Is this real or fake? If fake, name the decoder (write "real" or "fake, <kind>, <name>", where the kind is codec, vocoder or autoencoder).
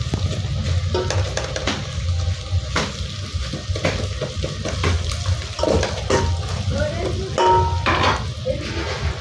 real